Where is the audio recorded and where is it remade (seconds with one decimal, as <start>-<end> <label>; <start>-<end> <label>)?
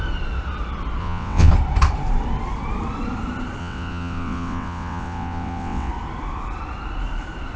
0.0-1.0 recorded; 1.0-1.5 remade; 1.5-3.6 recorded; 3.6-5.9 remade; 5.9-7.6 recorded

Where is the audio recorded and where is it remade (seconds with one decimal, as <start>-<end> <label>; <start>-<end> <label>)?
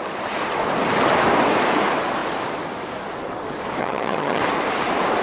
0.0-3.8 recorded; 3.8-4.4 remade; 4.4-5.2 recorded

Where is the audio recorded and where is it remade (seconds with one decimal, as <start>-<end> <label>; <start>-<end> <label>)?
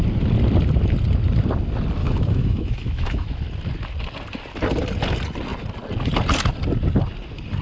0.0-2.0 recorded; 2.0-3.3 remade; 3.3-7.6 recorded